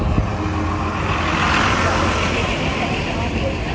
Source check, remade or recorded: recorded